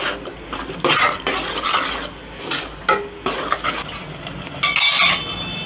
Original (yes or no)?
yes